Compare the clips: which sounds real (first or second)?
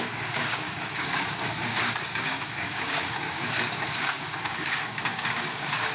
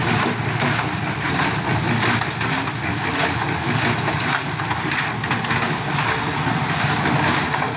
second